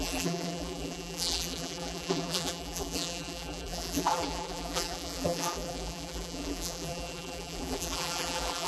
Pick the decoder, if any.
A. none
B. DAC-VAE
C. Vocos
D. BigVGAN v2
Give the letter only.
D